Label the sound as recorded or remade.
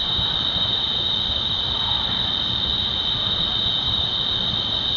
remade